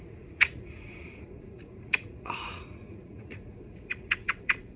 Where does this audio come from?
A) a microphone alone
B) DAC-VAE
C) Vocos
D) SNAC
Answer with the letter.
C